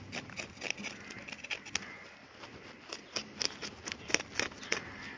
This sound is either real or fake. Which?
real